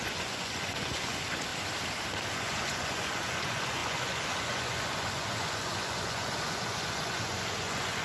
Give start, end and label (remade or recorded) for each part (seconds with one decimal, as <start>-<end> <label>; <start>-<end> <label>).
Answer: 0.0-1.5 remade; 1.5-2.3 recorded; 2.3-8.0 remade